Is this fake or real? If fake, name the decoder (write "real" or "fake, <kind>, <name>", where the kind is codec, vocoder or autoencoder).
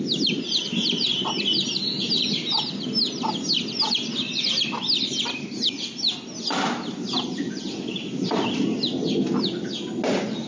real